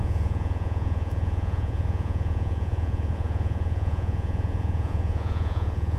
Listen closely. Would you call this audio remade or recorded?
remade